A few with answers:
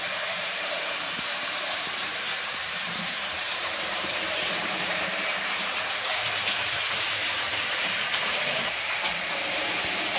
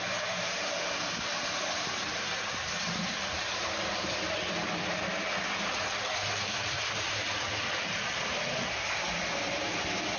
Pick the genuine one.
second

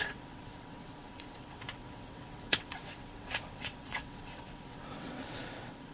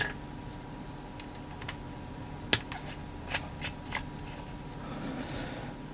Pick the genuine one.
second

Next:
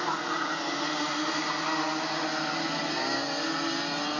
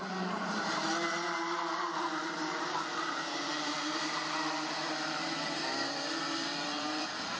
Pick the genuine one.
first